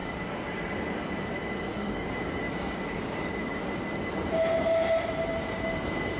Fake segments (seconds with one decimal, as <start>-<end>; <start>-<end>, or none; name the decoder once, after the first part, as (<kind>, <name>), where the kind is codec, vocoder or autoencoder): 1.7-3.8 (codec, DAC)